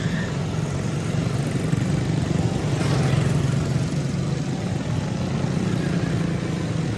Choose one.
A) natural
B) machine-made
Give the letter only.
A